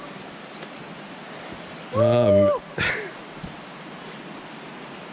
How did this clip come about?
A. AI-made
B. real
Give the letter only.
B